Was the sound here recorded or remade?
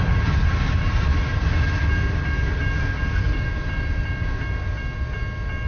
recorded